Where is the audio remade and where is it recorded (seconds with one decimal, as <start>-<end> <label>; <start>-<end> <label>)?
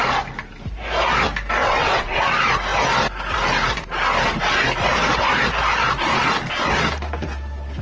0.0-1.6 recorded; 1.6-2.2 remade; 2.2-7.8 recorded